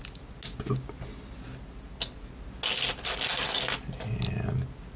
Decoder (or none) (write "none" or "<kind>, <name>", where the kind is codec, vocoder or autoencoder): none